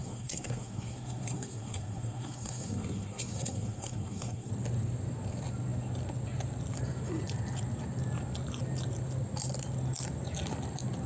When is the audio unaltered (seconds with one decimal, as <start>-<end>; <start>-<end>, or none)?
4.5-11.1